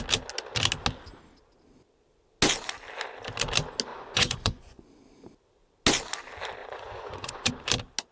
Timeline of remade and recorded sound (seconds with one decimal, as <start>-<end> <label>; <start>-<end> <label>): 0.0-3.9 recorded; 3.9-4.9 remade; 4.9-6.6 recorded; 6.6-7.5 remade; 7.5-8.1 recorded